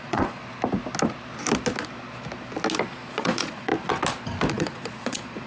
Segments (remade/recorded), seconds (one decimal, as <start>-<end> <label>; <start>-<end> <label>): 0.0-0.4 remade; 0.4-2.9 recorded; 2.9-3.7 remade; 3.7-4.5 recorded; 4.5-5.5 remade